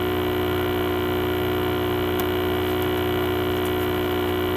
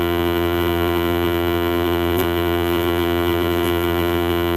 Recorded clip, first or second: first